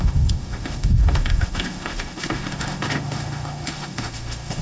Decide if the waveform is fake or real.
fake